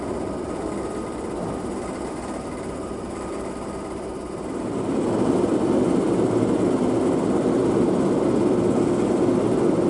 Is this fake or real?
real